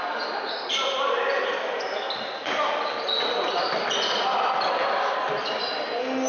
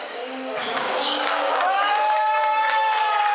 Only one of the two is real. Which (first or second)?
first